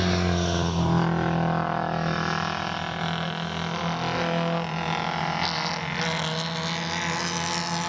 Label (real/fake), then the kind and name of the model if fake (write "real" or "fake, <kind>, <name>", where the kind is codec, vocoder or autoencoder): real